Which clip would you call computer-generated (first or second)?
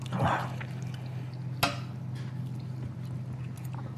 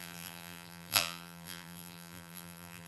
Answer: second